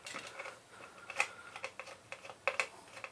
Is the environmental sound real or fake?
real